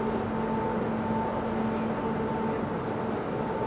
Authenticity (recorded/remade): recorded